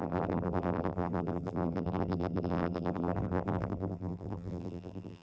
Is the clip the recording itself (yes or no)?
no